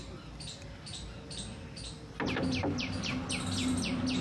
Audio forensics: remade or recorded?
recorded